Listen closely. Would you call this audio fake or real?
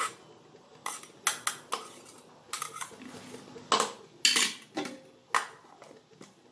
real